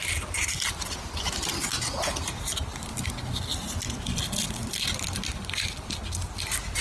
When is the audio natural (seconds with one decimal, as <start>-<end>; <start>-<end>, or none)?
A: 0.0-6.8